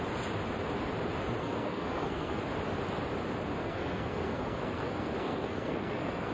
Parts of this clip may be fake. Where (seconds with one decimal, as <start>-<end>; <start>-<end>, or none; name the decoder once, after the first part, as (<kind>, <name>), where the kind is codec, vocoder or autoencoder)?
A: 1.4-2.4 (codec, SNAC); 3.6-6.3